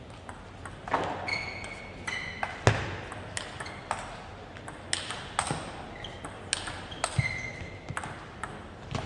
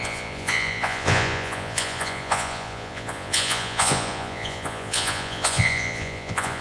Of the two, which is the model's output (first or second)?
second